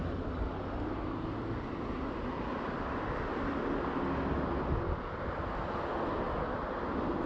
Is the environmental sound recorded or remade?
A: recorded